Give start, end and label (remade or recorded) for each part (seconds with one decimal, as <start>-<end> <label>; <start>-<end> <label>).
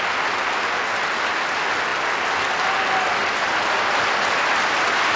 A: 0.0-5.2 recorded